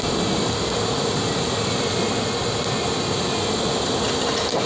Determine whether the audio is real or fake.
real